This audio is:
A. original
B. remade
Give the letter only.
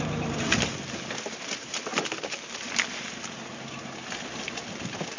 A